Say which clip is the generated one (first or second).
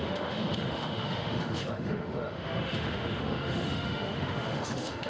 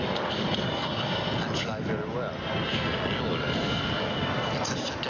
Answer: first